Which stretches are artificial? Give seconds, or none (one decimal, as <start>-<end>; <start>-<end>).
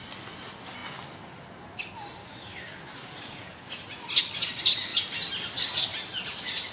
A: 2.2-3.7